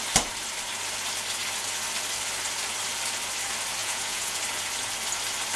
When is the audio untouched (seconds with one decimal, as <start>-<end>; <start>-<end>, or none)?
0.0-3.8; 4.4-5.6